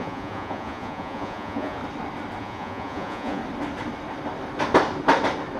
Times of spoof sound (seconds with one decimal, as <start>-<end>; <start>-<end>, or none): 0.0-1.8; 2.4-3.4